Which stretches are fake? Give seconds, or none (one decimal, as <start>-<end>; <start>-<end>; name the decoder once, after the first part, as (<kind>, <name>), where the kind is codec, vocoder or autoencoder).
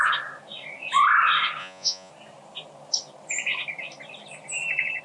1.6-2.1 (vocoder, Vocos)